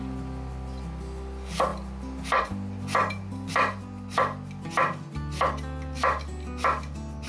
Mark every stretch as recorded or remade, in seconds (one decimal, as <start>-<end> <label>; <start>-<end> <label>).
0.0-7.3 recorded